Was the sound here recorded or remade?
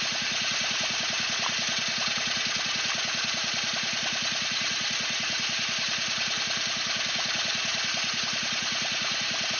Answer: recorded